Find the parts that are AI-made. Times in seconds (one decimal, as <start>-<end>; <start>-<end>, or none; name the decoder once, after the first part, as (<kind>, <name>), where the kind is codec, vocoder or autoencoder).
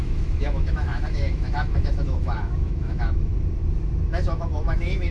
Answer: 0.0-3.3 (autoencoder, DAC-VAE); 4.1-5.1